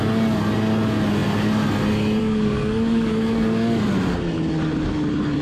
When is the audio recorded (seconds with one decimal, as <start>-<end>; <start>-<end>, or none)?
0.0-2.2; 3.8-5.4